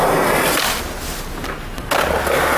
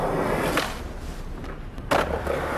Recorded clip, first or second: first